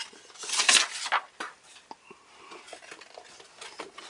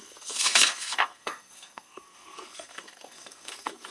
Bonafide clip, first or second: first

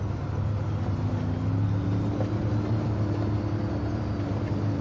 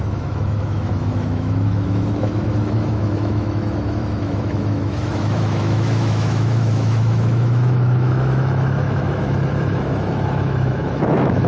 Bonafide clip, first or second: first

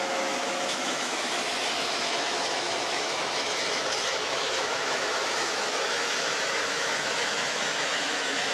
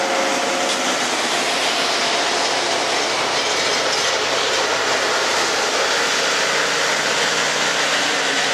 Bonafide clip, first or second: second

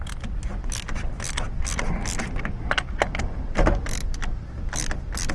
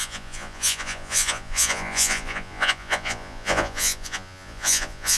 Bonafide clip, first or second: first